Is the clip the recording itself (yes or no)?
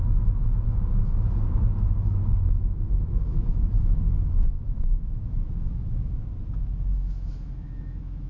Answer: no